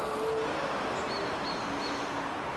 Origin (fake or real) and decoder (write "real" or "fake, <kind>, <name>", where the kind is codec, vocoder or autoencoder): real